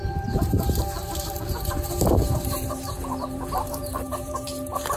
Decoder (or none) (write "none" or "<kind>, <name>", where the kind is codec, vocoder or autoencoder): vocoder, BigVGAN v2